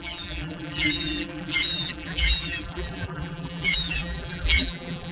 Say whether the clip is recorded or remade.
remade